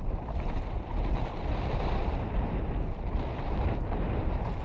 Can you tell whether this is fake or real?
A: fake